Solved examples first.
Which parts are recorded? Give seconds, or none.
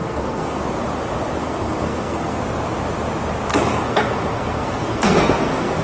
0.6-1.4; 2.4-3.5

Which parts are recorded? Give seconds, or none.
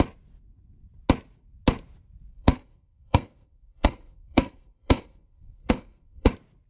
0.0-2.3; 6.3-6.7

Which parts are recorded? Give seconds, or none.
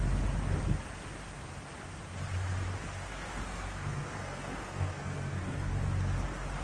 0.0-3.1; 5.7-6.6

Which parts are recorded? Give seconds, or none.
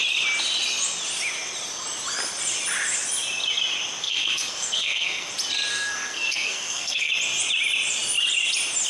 0.0-4.0; 5.3-5.7; 7.1-8.9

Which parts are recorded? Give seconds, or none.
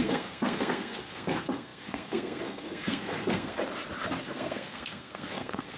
3.6-4.2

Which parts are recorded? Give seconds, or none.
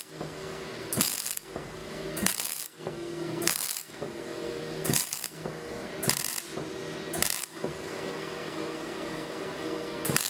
5.9-7.4